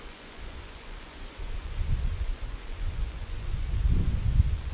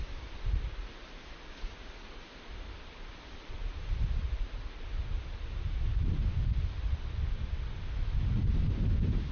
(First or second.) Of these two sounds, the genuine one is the second